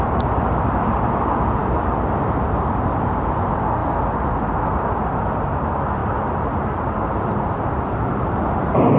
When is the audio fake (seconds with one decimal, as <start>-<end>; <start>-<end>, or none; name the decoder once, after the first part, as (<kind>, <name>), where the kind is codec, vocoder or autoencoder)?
none